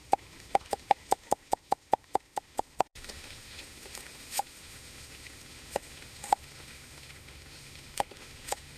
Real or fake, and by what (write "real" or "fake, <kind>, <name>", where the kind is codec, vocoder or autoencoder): fake, autoencoder, DAC-VAE